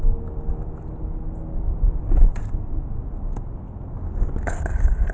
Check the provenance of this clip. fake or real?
real